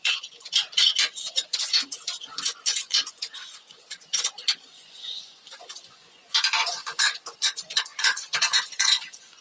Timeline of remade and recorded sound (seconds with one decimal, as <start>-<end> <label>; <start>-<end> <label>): 0.0-9.4 remade